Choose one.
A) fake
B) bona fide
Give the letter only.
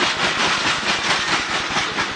B